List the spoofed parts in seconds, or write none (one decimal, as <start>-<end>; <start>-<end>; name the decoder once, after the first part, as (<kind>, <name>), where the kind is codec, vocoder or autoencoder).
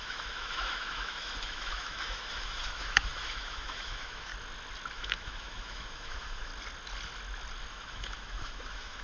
0.0-4.3 (autoencoder, DAC-VAE); 4.9-6.5; 7.7-9.0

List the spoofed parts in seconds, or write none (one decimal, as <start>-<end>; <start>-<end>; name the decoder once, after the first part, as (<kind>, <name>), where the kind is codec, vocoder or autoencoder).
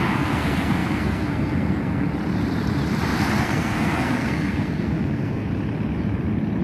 0.0-2.1 (codec, SNAC); 3.4-5.5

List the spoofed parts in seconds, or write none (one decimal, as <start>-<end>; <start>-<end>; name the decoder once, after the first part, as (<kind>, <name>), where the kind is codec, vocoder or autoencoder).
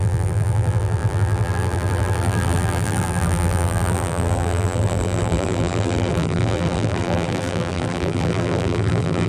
0.0-9.3 (vocoder, BigVGAN v2)